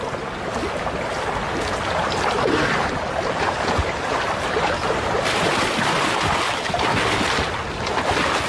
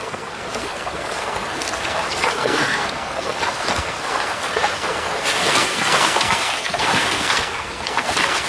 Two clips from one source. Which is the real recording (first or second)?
first